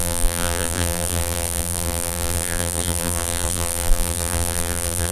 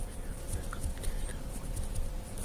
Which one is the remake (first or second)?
first